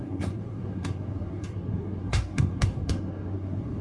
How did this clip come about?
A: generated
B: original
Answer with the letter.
A